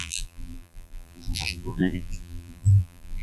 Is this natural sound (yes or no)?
no